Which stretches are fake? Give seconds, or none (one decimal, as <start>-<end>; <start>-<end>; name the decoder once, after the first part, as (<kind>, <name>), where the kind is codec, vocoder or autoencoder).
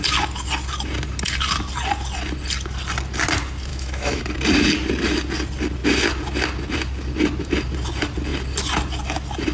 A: 3.7-4.2 (autoencoder, DAC-VAE)